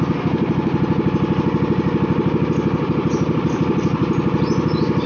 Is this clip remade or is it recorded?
recorded